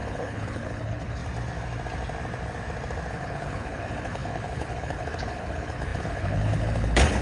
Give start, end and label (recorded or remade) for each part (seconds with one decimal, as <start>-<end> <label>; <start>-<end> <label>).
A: 0.0-1.2 remade; 1.2-3.1 recorded; 3.1-7.2 remade